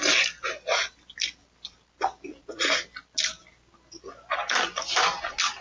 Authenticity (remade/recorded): recorded